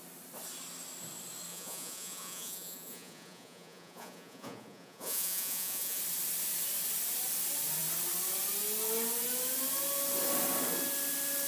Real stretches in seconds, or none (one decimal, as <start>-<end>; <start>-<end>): 0.0-1.5; 6.0-11.5